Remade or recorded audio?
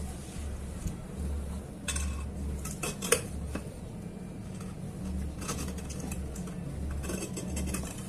recorded